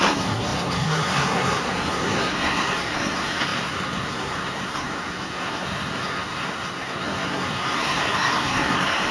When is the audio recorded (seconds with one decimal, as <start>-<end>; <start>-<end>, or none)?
none